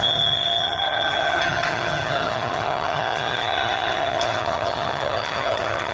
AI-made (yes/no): yes